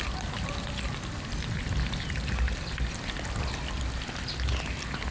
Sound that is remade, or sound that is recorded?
recorded